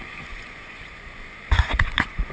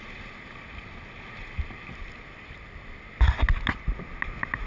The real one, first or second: second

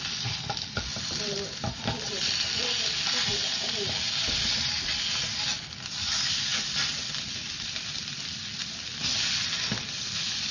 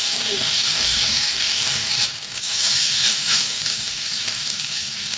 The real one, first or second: first